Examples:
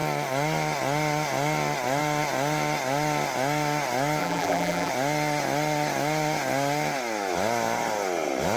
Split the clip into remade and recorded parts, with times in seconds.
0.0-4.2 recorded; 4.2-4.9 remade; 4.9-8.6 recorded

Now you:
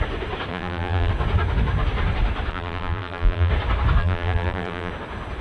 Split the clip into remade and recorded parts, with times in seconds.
0.0-0.5 recorded; 0.5-1.1 remade; 1.1-2.5 recorded; 2.5-3.5 remade; 3.5-4.0 recorded; 4.0-4.9 remade; 4.9-5.4 recorded

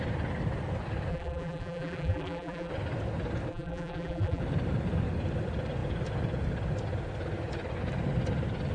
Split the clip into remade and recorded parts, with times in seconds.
0.0-1.1 recorded; 1.1-2.7 remade; 2.7-3.5 recorded; 3.5-4.4 remade; 4.4-8.7 recorded

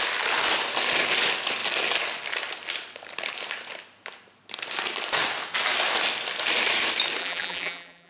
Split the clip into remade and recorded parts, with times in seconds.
0.0-7.2 recorded; 7.2-8.1 remade

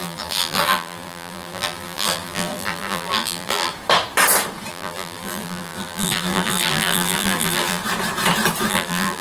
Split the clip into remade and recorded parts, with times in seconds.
0.0-3.7 remade; 3.7-4.7 recorded; 4.7-7.8 remade; 7.8-8.7 recorded; 8.7-9.2 remade

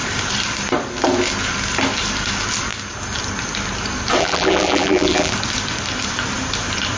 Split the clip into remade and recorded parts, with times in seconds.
0.0-4.2 recorded; 4.2-5.3 remade; 5.3-7.0 recorded